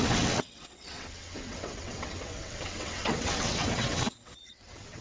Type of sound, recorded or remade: remade